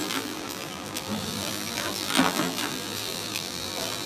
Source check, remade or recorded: remade